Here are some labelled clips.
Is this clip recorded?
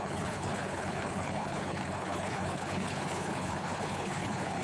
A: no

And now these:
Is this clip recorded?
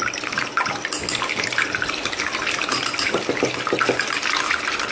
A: yes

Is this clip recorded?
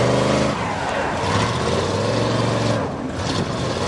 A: yes